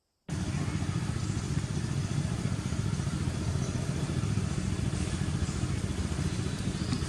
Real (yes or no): no